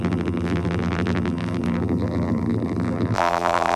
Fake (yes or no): yes